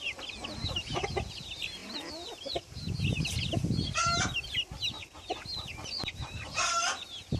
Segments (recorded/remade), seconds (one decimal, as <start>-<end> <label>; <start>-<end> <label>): 0.0-7.4 recorded